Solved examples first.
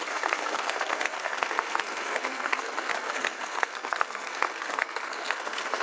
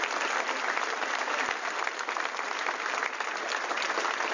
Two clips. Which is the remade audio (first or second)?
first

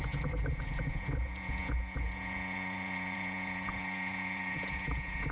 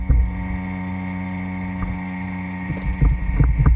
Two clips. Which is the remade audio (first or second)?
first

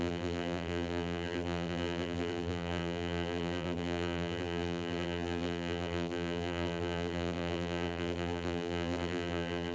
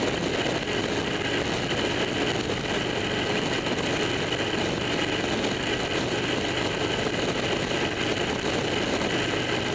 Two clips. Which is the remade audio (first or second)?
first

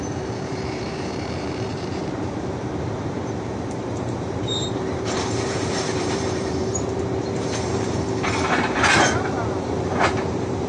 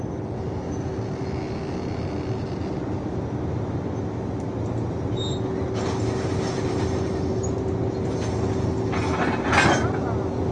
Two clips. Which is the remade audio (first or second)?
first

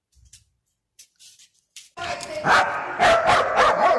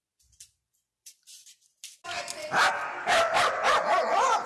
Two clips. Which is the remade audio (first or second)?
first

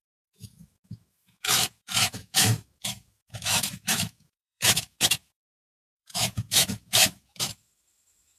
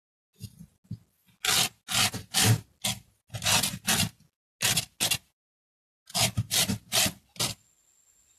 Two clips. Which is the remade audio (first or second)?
first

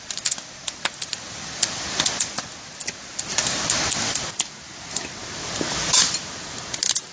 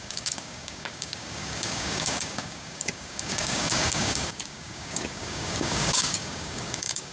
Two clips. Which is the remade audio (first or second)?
second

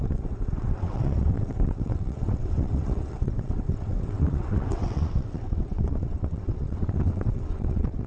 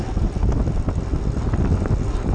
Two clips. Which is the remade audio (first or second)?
first